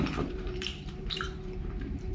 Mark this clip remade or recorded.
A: remade